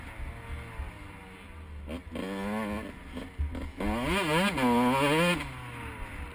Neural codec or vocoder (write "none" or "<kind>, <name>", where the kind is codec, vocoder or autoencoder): none